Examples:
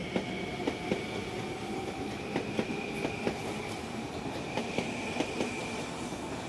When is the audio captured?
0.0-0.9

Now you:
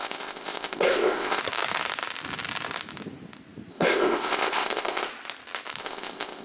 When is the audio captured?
1.4-3.7; 5.1-5.8